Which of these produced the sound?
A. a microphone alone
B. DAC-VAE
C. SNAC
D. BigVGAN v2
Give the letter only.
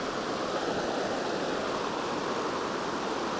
A